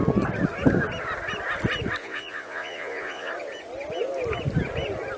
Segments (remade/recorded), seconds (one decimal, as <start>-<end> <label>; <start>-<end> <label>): 0.0-2.0 recorded; 2.0-3.3 remade; 3.3-5.2 recorded